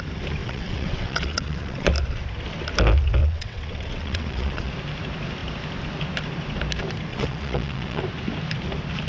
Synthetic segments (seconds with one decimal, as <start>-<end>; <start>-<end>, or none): 0.4-1.9; 3.2-4.7; 7.1-8.0